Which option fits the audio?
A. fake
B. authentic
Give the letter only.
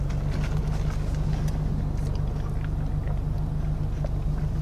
B